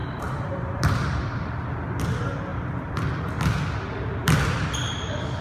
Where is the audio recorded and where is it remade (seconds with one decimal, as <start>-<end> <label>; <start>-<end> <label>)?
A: 0.0-2.0 remade; 2.0-2.5 recorded; 2.5-3.3 remade; 3.3-4.2 recorded; 4.2-4.9 remade; 4.9-5.4 recorded